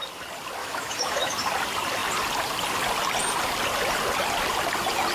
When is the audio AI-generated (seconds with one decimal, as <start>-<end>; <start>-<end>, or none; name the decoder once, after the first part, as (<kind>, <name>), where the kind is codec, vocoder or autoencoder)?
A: 0.6-1.4 (autoencoder, DAC-VAE)